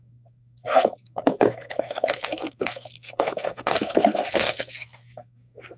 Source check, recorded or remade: remade